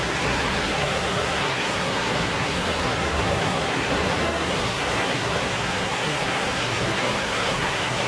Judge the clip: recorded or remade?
remade